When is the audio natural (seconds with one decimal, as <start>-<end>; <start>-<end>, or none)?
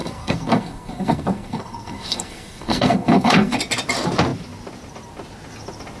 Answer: 3.6-6.0